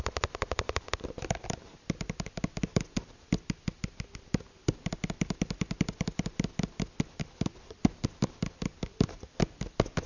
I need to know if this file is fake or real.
real